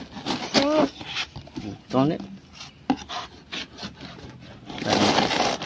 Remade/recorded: recorded